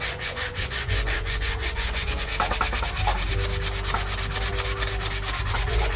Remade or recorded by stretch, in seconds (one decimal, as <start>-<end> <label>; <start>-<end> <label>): 0.0-2.3 remade; 2.3-5.5 recorded; 5.5-6.0 remade